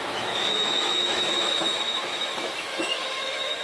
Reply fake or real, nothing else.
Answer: fake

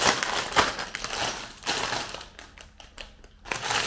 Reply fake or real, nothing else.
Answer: real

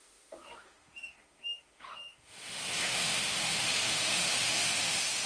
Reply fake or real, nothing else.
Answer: fake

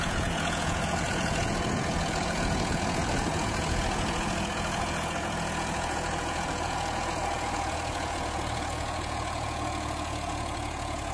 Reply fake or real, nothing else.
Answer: fake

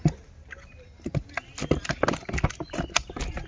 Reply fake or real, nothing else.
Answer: real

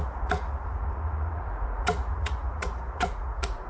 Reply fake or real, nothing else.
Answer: fake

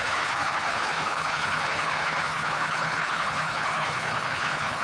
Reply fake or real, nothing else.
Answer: fake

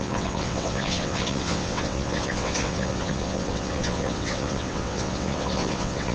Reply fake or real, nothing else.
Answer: fake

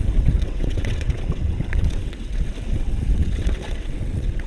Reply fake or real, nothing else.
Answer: fake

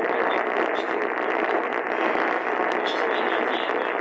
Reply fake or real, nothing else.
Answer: real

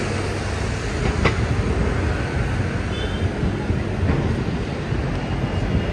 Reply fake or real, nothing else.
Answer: real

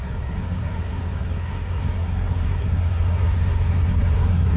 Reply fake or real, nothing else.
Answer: fake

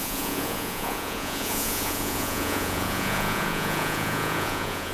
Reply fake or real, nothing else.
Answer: fake